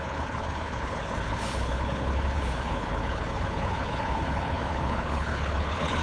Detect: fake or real fake